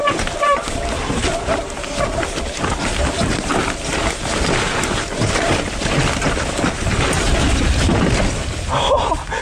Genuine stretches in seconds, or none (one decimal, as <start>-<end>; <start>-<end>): 0.0-9.4